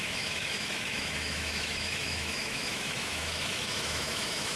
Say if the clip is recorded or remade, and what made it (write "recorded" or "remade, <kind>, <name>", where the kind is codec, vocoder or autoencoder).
remade, autoencoder, DAC-VAE